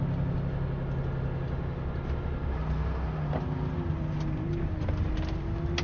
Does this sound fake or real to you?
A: real